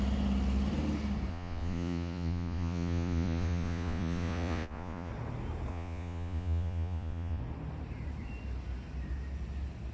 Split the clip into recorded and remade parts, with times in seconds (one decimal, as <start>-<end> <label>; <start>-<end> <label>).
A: 0.0-1.3 recorded; 1.3-5.1 remade; 5.1-5.7 recorded; 5.7-7.4 remade; 7.4-9.9 recorded